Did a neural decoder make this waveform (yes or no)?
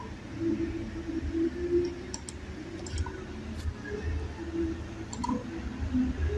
no